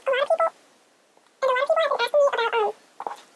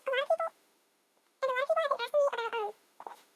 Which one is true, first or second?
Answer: first